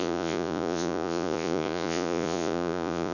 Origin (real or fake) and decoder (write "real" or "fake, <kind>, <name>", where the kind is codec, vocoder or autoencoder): fake, vocoder, Vocos